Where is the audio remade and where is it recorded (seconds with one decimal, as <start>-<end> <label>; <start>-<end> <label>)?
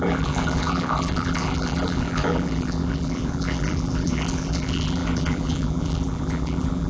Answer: 0.0-6.9 remade